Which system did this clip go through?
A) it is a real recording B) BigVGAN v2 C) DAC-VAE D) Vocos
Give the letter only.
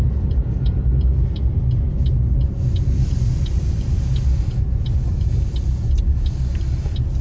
A